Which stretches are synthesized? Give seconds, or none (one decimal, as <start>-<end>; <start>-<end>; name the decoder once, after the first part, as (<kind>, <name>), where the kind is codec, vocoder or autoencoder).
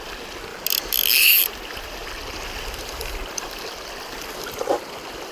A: 1.4-5.3 (vocoder, BigVGAN v2)